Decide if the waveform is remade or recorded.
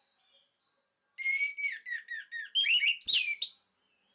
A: recorded